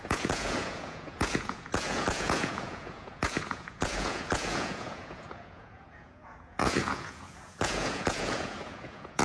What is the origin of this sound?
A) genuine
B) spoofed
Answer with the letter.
B